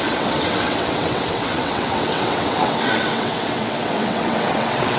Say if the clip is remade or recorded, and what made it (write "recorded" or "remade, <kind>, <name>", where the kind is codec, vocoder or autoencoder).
remade, vocoder, WaveNeXt